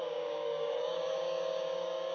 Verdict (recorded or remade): remade